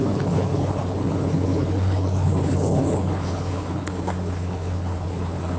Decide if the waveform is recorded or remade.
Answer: remade